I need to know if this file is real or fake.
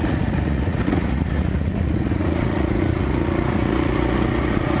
fake